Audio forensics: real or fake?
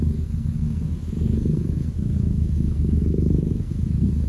fake